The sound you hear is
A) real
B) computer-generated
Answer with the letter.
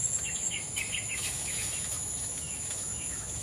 B